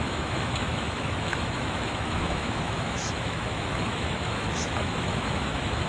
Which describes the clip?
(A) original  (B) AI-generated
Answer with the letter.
B